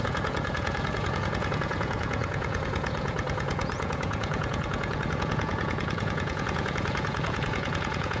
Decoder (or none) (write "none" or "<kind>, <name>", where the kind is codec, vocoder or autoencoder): vocoder, Vocos